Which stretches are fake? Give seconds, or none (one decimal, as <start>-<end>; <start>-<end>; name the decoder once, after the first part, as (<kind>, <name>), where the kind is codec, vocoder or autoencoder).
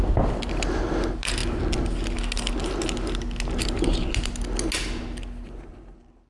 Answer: none